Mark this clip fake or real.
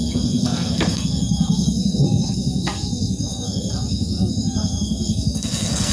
fake